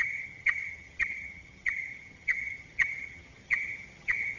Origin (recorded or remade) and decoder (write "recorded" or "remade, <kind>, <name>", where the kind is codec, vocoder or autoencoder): remade, vocoder, HiFi-GAN